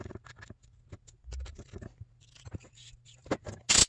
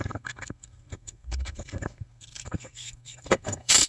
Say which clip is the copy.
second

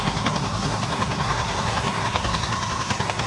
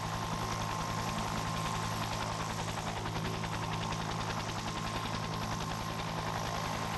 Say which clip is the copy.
first